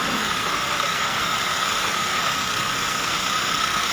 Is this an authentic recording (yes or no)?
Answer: no